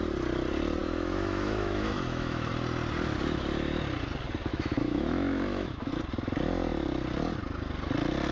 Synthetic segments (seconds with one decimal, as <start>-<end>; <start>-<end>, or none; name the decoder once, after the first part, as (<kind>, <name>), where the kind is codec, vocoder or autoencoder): 0.8-2.5 (autoencoder, DAC-VAE); 4.5-5.9